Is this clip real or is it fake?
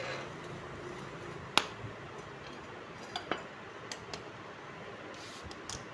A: real